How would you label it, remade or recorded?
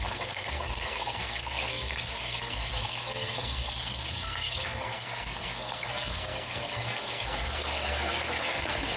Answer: remade